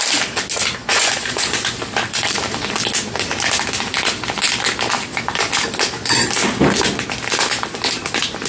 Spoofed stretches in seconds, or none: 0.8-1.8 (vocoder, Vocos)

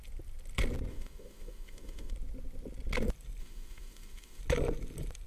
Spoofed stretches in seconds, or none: 0.9-2.1 (autoencoder, DAC-VAE); 3.4-4.4

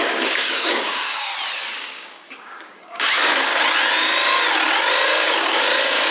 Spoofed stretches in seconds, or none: 0.0-1.3 (codec, DAC); 1.8-3.5; 4.9-6.1

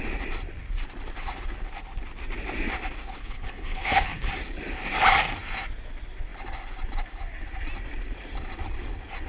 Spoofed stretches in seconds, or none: 3.2-4.3 (codec, HILCodec)

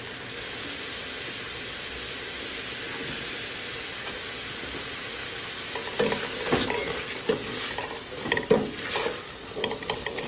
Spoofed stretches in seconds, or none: none

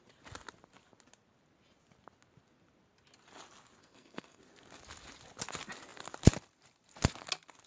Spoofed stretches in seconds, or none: 3.8-4.4 (codec, SNAC)

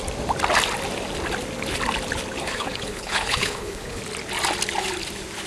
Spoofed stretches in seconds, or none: 2.4-4.0 (codec, HILCodec)

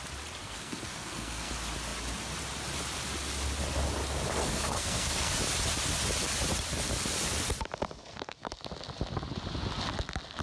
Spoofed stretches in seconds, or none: 0.4-1.5 (codec, SNAC); 4.3-5.4; 8.0-8.6